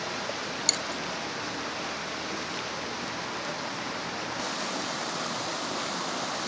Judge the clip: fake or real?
real